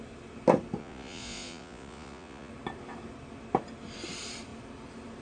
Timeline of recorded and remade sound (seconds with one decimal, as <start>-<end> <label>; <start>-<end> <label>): 0.0-0.8 recorded; 0.8-2.5 remade; 2.5-5.2 recorded